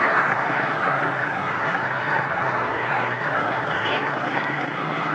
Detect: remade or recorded remade